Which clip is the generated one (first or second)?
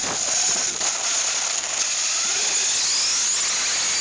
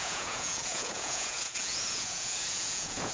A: second